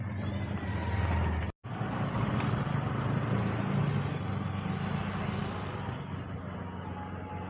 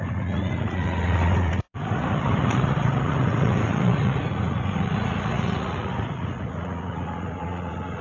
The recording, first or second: first